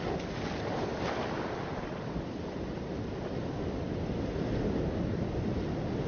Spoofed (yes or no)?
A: no